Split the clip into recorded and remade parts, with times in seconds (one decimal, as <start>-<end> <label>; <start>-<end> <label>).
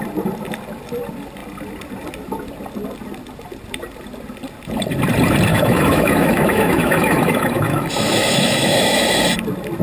0.0-5.5 recorded; 5.5-9.0 remade; 9.0-9.8 recorded